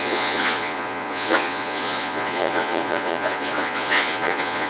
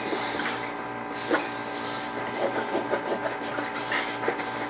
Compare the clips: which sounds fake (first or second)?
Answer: first